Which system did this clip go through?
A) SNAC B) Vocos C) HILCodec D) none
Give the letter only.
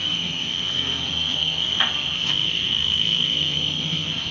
A